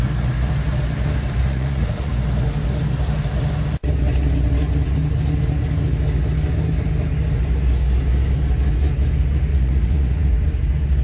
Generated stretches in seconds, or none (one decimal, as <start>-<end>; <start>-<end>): 1.4-2.1; 9.5-10.3